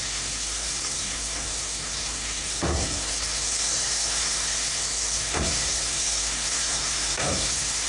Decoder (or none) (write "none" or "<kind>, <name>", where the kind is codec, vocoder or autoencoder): codec, SNAC